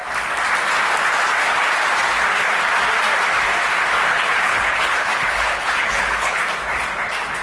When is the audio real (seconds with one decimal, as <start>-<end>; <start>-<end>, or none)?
0.0-4.1; 6.4-7.4